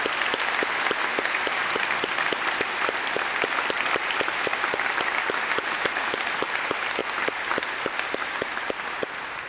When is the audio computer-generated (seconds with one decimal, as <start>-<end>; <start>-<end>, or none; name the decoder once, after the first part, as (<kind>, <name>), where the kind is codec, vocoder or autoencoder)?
none